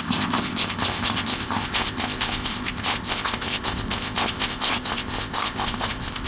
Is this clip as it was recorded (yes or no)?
no